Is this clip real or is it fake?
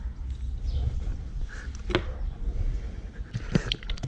real